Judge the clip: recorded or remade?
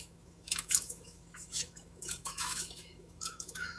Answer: remade